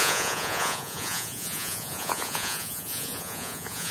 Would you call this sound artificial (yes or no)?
yes